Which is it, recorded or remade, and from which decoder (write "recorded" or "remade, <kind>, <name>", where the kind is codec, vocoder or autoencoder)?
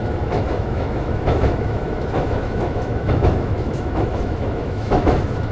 remade, autoencoder, DAC-VAE